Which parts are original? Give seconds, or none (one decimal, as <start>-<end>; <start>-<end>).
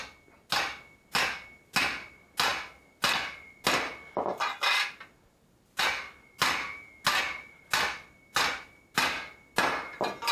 0.0-10.3